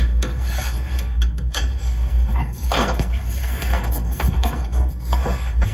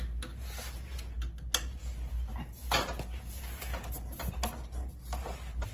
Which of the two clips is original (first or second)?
second